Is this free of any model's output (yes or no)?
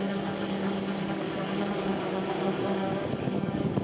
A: no